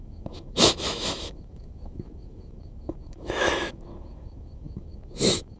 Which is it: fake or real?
fake